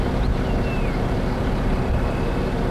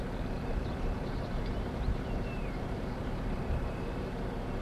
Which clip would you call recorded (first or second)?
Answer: first